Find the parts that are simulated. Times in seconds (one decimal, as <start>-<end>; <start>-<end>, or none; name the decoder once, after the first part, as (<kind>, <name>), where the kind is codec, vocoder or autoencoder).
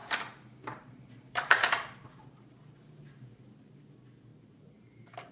0.0-2.8 (vocoder, BigVGAN v2); 4.3-5.3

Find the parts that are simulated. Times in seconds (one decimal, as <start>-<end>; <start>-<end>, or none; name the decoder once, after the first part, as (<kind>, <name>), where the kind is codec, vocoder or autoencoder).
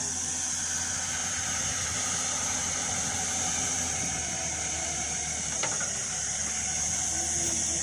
1.2-5.9 (vocoder, BigVGAN v2)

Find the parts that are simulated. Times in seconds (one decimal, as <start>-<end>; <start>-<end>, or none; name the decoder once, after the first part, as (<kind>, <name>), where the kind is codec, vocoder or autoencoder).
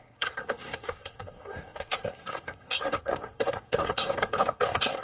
0.0-5.0 (codec, SNAC)